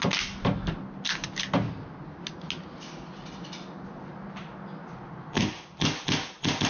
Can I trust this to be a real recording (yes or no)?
yes